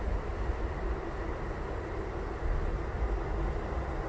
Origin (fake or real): real